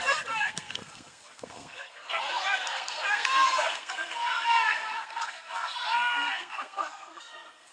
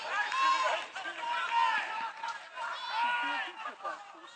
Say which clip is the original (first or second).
second